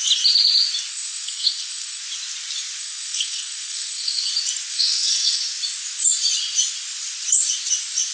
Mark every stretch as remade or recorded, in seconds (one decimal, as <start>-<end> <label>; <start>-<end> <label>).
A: 0.0-0.9 recorded; 0.9-2.0 remade; 2.0-2.8 recorded; 2.8-4.3 remade; 4.3-4.7 recorded; 4.7-5.4 remade; 5.4-8.1 recorded